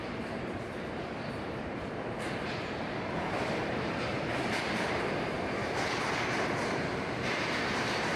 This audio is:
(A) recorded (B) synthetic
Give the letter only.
B